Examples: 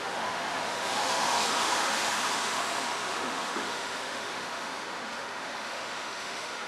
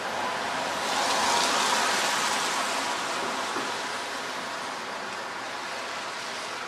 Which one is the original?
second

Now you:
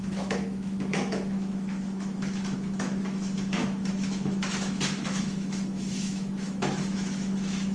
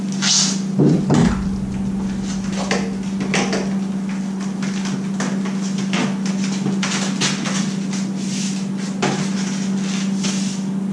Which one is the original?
second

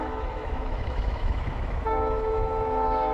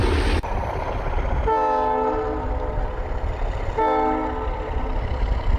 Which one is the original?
second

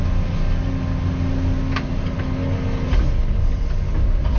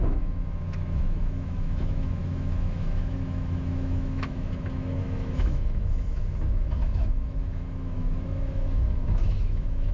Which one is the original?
first